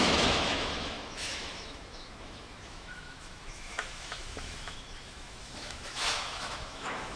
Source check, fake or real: fake